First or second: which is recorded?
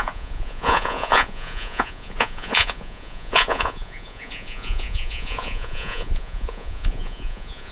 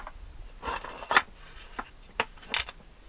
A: second